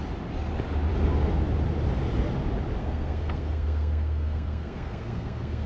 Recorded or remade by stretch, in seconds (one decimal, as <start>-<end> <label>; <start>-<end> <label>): 0.0-2.8 recorded; 2.8-5.7 remade